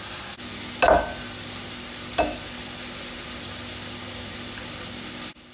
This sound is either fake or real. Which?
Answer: real